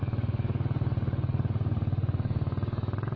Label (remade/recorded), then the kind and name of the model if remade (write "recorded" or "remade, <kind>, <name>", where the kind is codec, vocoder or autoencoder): recorded